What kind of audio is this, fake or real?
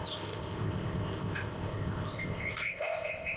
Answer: fake